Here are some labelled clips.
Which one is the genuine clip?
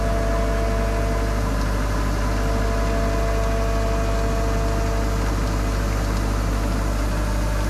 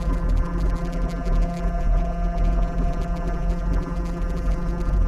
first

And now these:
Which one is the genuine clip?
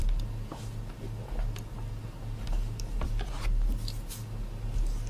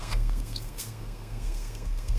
first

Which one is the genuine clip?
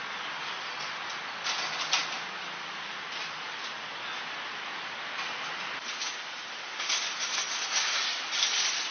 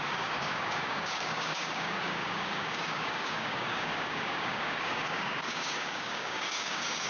first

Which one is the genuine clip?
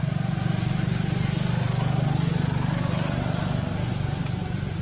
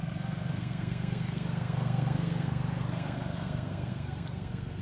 first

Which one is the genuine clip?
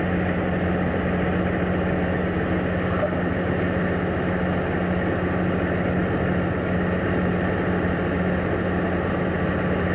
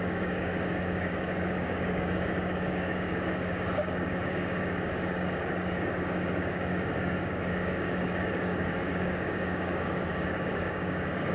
first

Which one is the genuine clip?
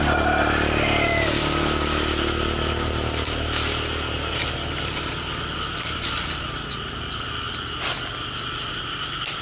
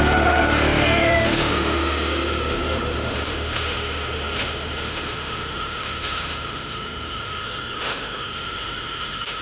first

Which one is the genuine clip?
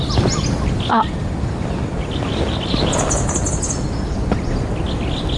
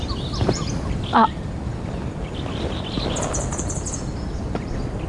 first